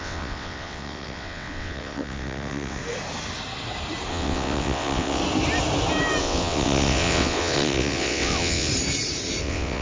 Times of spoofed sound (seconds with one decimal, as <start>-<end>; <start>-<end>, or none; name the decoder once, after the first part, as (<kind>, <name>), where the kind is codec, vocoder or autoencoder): 0.0-2.8 (vocoder, WaveNeXt); 4.1-5.2; 6.2-8.7; 9.4-9.8